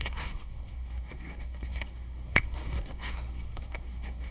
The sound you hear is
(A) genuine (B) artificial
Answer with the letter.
B